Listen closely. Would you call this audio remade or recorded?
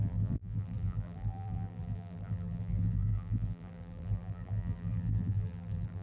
remade